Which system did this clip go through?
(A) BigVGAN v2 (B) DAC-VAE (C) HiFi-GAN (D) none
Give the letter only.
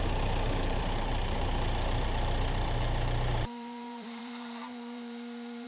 A